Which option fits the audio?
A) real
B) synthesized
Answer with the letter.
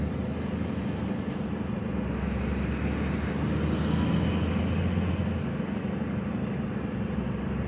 A